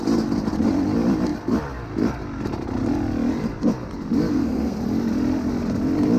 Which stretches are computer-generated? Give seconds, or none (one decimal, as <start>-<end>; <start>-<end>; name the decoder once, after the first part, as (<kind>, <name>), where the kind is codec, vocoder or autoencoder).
4.3-4.8 (codec, SNAC)